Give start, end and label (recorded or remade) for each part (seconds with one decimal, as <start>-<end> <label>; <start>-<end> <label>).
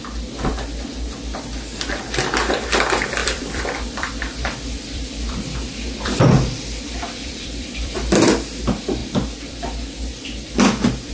0.0-3.2 recorded; 3.2-8.3 remade; 8.3-9.0 recorded; 9.0-9.6 remade; 9.6-10.1 recorded; 10.1-11.1 remade